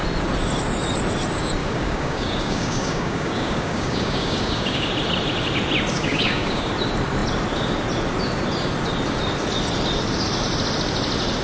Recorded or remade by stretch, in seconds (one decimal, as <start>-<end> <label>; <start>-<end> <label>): 0.0-1.6 recorded; 1.6-4.9 remade; 4.9-5.9 recorded; 5.9-6.7 remade; 6.7-11.4 recorded